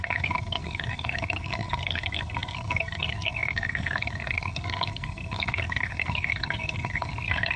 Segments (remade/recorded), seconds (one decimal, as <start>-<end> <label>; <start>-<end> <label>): 0.0-7.6 remade